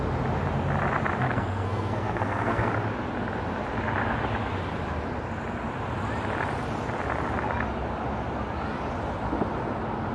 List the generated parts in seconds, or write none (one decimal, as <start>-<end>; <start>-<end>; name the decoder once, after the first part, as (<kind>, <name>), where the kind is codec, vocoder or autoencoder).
1.2-2.7 (codec, SNAC)